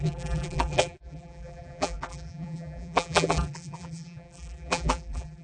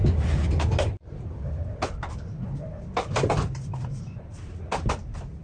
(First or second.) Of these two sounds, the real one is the second